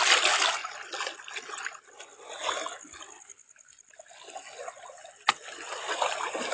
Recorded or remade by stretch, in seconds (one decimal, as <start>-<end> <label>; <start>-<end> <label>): 0.0-6.5 recorded